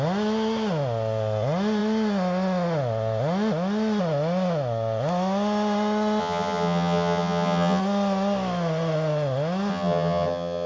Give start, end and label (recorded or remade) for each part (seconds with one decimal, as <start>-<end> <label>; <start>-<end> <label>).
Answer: 0.0-6.2 recorded; 6.2-7.8 remade; 7.8-9.7 recorded; 9.7-10.7 remade